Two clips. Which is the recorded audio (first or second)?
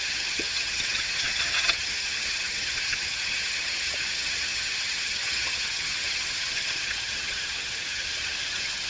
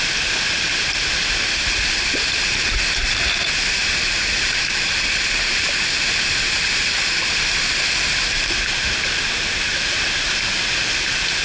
second